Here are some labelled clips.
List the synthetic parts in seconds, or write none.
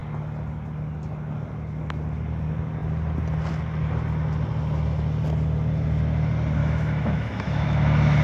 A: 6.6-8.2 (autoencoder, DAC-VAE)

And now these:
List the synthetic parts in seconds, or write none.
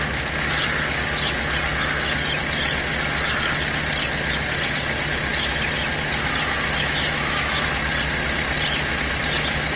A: 6.8-7.7 (autoencoder, DAC-VAE)